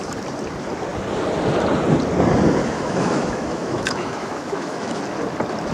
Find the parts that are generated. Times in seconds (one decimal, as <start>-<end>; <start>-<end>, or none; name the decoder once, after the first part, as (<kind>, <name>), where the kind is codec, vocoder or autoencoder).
2.6-5.0 (autoencoder, DAC-VAE)